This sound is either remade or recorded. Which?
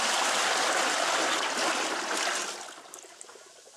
recorded